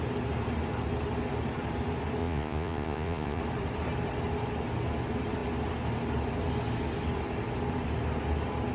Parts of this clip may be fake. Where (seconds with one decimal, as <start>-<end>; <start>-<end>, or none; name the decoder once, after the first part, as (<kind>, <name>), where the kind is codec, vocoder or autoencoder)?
2.2-3.4 (vocoder, Vocos)